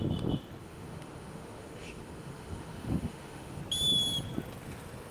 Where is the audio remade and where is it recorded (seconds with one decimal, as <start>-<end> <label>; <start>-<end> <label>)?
0.0-0.6 recorded; 0.6-3.6 remade; 3.6-5.1 recorded